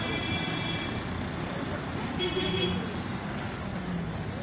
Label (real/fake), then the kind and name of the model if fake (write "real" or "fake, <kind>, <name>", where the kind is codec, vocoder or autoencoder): real